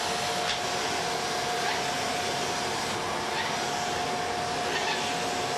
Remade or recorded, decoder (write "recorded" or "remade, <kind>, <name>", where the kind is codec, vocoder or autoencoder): recorded